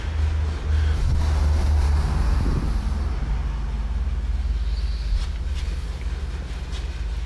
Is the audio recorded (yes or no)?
yes